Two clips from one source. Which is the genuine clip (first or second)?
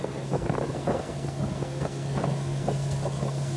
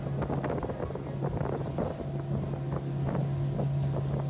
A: second